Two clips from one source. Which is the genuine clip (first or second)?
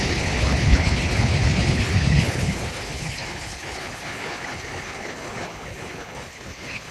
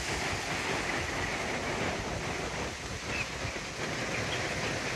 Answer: second